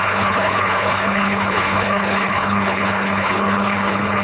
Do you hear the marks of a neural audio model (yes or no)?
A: yes